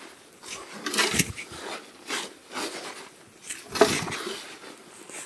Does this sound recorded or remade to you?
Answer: recorded